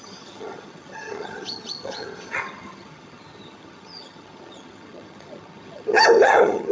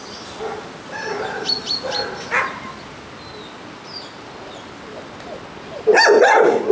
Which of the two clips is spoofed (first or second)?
first